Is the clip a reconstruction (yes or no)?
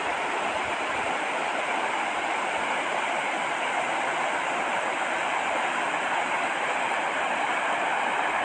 yes